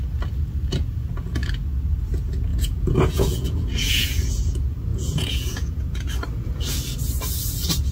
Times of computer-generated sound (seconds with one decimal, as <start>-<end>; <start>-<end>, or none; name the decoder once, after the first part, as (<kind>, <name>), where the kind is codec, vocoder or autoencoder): 2.5-4.3 (vocoder, Vocos); 4.9-6.1